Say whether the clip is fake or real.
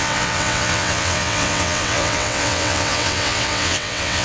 fake